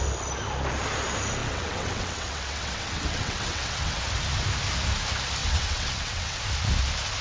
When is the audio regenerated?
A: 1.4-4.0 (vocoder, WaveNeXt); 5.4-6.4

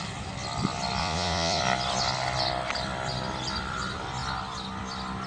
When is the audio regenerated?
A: 1.0-1.6 (vocoder, Vocos)

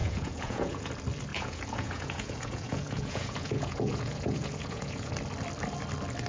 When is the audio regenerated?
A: 0.0-0.9 (vocoder, Vocos); 1.3-5.1

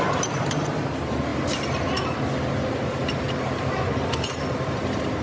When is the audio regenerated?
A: none

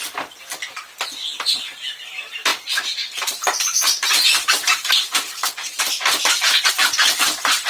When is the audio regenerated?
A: 0.0-7.7 (vocoder, BigVGAN v2)

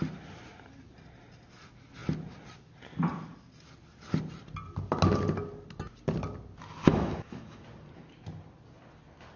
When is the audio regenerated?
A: 6.9-7.6 (autoencoder, DAC-VAE)